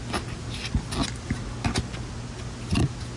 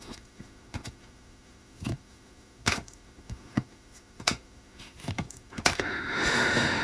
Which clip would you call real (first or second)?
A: first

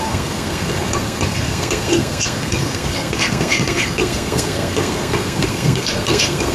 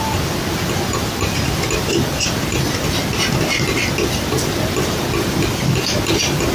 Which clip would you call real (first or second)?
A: second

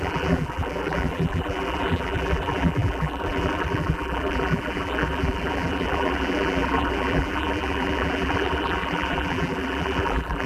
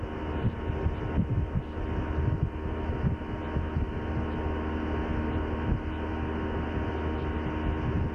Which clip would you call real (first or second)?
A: second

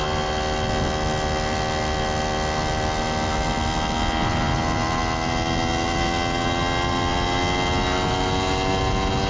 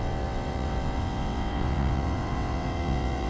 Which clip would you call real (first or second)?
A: first